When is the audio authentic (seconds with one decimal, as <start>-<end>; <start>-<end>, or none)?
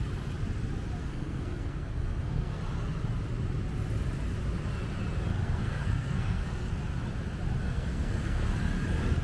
0.0-1.0; 2.6-5.3; 6.8-7.6; 8.5-9.2